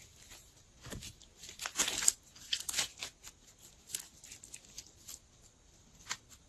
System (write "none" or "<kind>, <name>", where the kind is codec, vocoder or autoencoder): none